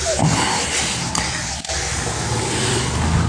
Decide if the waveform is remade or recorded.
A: recorded